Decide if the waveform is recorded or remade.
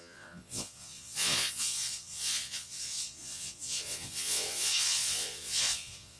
remade